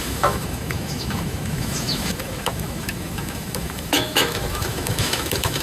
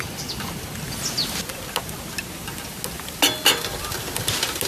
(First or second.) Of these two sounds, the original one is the second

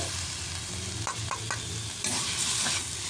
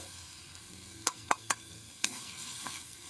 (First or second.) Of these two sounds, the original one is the first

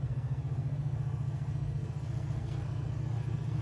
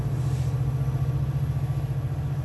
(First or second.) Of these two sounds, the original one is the second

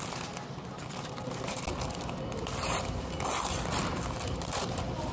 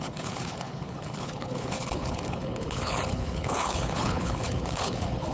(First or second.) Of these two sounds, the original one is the first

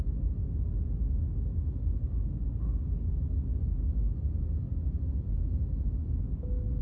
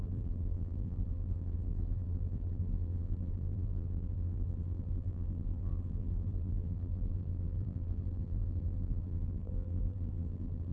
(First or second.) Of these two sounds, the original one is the first